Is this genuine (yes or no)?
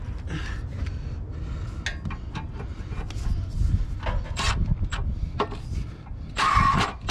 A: yes